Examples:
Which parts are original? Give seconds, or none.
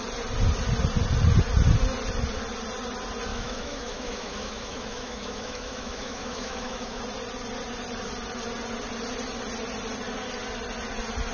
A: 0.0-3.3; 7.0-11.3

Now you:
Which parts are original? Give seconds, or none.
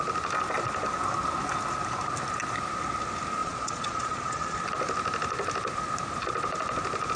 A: 0.0-3.4; 4.6-7.2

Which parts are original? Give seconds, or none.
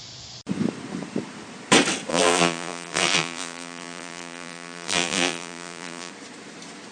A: 0.0-2.1; 6.1-6.9